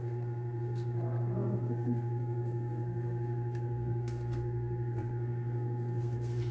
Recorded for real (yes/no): no